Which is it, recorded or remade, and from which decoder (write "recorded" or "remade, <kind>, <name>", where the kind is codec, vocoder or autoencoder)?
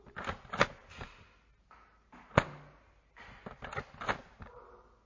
recorded